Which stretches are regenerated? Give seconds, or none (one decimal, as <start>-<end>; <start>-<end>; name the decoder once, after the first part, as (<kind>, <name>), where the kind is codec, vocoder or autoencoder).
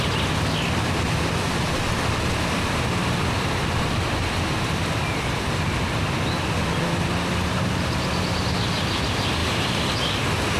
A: 9.4-10.0 (vocoder, BigVGAN v2)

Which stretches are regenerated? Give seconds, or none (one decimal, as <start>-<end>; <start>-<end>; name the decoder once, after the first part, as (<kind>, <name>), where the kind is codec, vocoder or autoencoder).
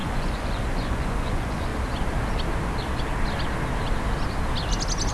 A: 0.0-1.7 (vocoder, Vocos)